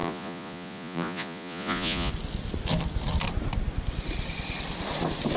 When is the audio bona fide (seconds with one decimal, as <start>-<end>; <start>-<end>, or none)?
2.1-5.4